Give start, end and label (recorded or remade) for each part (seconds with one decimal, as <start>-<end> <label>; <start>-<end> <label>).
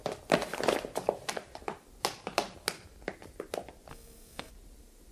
0.0-3.9 recorded; 3.9-4.5 remade; 4.5-5.1 recorded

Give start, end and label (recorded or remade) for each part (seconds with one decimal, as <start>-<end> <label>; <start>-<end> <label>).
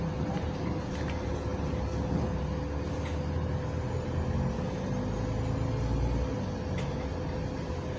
0.0-8.0 recorded